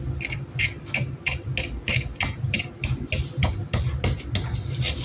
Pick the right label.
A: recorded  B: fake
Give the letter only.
A